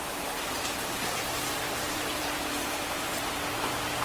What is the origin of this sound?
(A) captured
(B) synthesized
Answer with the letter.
B